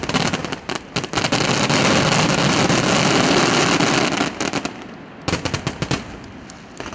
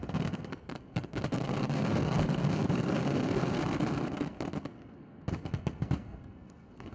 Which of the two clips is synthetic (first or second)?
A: second